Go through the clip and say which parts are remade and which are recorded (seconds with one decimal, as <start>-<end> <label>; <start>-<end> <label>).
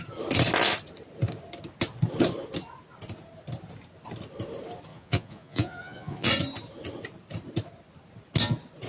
0.0-4.9 recorded; 4.9-6.3 remade; 6.3-8.9 recorded